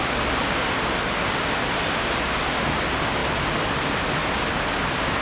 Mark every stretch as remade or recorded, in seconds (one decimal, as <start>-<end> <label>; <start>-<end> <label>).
0.0-5.2 recorded